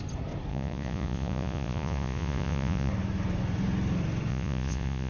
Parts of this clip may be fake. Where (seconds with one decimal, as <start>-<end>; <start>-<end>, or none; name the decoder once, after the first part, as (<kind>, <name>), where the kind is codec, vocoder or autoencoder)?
0.5-2.9 (vocoder, Vocos); 4.3-5.1